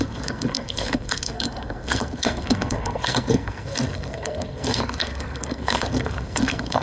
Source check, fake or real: fake